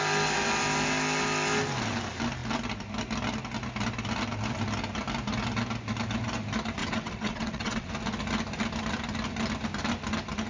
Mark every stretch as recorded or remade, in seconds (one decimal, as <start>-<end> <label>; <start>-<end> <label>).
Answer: 0.0-6.8 recorded; 6.8-7.9 remade; 7.9-10.5 recorded